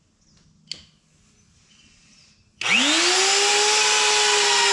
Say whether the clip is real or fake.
real